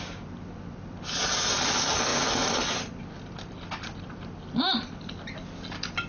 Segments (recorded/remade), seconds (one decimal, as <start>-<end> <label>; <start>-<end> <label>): 0.0-6.1 recorded

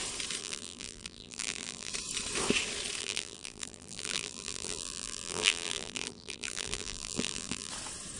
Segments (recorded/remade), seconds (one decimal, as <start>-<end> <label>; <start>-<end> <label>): 0.0-0.4 recorded; 0.4-1.9 remade; 1.9-3.0 recorded; 3.0-7.7 remade; 7.7-8.2 recorded